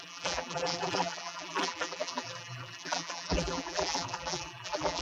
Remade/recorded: remade